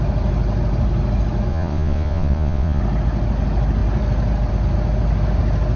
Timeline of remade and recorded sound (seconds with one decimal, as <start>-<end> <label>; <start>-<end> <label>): 0.0-1.5 recorded; 1.5-2.8 remade; 2.8-5.8 recorded